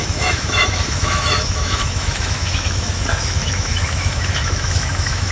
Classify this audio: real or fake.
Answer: fake